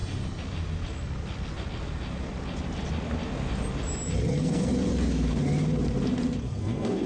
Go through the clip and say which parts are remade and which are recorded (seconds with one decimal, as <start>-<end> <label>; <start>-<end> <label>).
0.0-4.3 recorded; 4.3-4.7 remade; 4.7-6.4 recorded; 6.4-7.1 remade